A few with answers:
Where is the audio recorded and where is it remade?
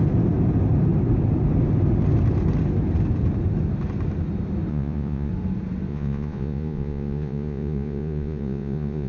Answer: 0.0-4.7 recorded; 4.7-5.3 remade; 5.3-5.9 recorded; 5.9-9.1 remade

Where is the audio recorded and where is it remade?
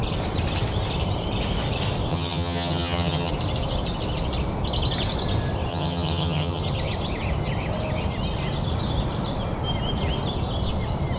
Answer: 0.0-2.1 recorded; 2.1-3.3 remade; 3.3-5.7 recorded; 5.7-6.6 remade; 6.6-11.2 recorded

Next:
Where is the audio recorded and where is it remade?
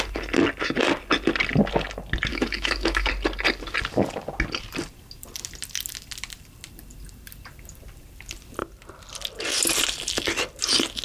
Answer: 0.0-2.3 recorded; 2.3-3.1 remade; 3.1-11.0 recorded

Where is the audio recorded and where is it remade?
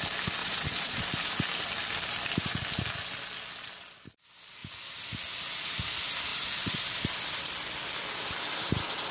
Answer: 0.0-0.4 recorded; 0.4-1.1 remade; 1.1-6.3 recorded; 6.3-6.8 remade; 6.8-9.1 recorded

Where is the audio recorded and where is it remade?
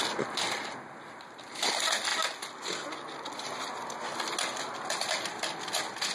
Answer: 0.0-6.1 recorded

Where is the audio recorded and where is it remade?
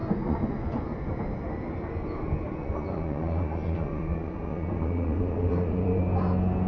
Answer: 0.0-1.1 remade; 1.1-2.5 recorded; 2.5-6.0 remade; 6.0-6.7 recorded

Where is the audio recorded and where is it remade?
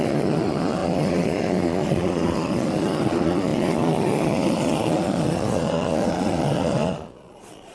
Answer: 0.0-7.7 remade